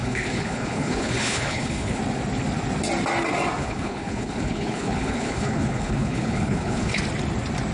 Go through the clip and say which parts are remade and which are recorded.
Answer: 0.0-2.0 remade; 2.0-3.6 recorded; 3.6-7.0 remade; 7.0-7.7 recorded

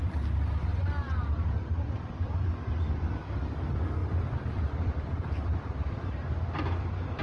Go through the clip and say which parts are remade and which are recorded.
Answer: 0.0-4.0 recorded; 4.0-5.1 remade; 5.1-7.2 recorded

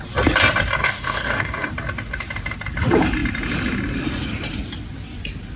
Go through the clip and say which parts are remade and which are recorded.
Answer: 0.0-0.8 recorded; 0.8-1.7 remade; 1.7-5.6 recorded

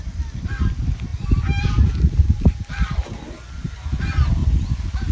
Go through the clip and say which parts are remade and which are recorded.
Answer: 0.0-4.4 remade; 4.4-5.1 recorded

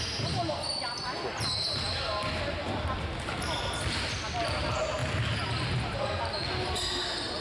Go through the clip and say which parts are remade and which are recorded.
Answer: 0.0-7.4 recorded

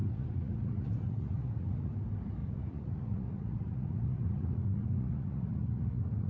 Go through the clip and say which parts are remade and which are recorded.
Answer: 0.0-1.9 remade; 1.9-2.4 recorded; 2.4-6.3 remade